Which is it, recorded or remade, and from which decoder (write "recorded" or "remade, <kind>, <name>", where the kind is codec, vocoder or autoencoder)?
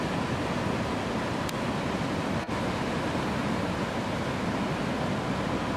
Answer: recorded